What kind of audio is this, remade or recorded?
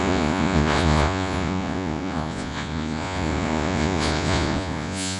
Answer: remade